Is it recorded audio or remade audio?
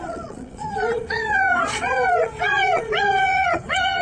remade